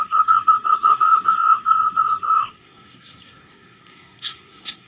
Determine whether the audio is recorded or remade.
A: remade